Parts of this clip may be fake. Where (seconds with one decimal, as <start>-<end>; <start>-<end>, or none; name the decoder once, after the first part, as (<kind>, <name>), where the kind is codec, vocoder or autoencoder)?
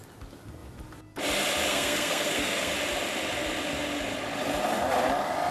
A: 1.7-2.7 (codec, SNAC)